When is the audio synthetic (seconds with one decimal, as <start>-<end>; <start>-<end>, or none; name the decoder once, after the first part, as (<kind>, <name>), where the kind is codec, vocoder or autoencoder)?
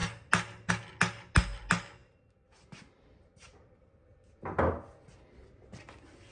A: none